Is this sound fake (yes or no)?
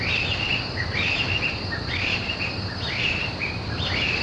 yes